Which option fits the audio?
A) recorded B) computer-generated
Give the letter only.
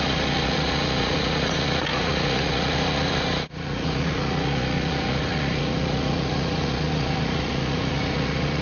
B